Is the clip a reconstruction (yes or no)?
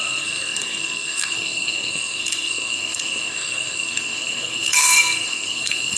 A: yes